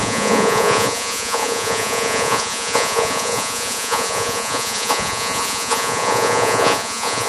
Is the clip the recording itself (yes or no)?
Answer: no